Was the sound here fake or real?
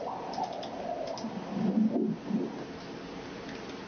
real